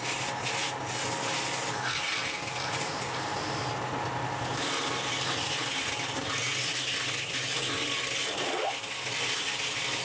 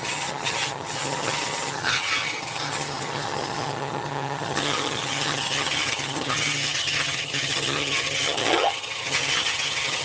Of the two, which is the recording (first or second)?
first